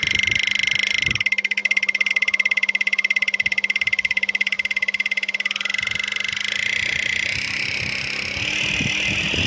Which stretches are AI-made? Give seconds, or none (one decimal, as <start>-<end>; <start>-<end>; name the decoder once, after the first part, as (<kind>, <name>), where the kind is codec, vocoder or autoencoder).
none